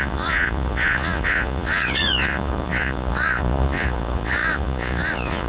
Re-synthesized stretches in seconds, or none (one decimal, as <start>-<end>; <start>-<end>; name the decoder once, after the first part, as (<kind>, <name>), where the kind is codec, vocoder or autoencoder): 0.0-5.5 (vocoder, Vocos)